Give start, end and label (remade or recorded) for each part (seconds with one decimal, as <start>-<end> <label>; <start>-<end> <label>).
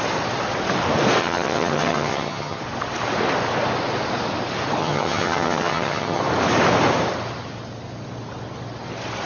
0.0-1.2 recorded; 1.2-2.6 remade; 2.6-4.8 recorded; 4.8-6.2 remade; 6.2-9.3 recorded